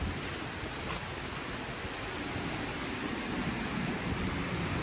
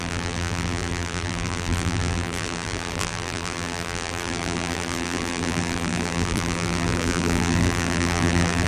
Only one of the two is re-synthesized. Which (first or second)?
second